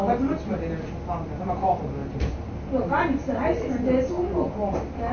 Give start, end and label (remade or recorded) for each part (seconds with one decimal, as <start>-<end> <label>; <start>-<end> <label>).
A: 0.0-5.1 recorded